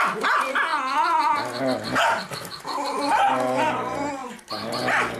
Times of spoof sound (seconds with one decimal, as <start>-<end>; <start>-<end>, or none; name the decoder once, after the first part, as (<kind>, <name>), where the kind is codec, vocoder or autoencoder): 2.7-3.3 (vocoder, BigVGAN v2)